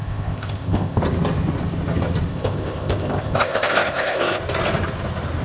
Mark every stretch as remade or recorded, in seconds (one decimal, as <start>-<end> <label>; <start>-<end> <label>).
0.0-1.0 remade; 1.0-2.3 recorded; 2.3-4.4 remade; 4.4-5.4 recorded